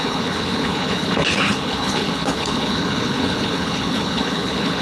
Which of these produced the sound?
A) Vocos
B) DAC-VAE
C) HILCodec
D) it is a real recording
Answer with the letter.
C